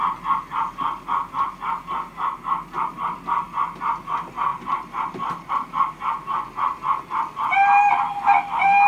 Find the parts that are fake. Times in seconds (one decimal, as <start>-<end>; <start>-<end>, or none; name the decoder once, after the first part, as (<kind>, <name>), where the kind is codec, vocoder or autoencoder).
none